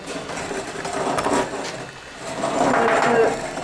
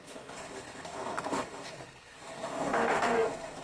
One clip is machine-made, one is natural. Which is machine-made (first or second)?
second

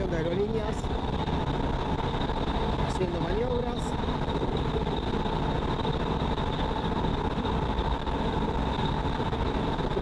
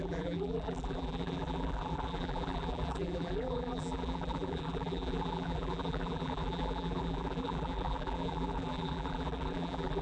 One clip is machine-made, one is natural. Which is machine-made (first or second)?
second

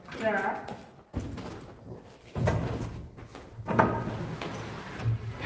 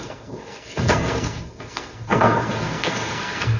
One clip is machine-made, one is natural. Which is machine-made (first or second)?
second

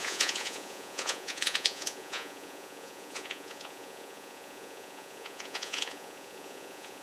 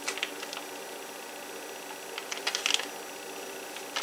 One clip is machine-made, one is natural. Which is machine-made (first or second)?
first